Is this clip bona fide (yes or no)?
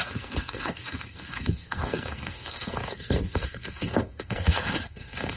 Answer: no